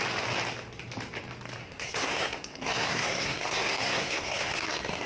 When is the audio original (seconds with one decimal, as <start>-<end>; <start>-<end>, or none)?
0.0-1.6